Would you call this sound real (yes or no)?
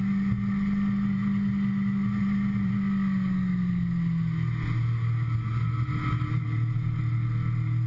yes